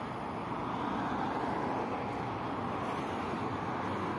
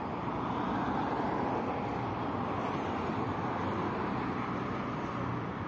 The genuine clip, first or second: first